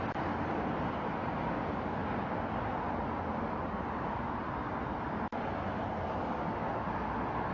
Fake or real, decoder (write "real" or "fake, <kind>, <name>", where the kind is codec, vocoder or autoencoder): real